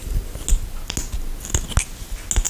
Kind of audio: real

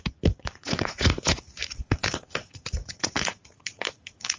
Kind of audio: fake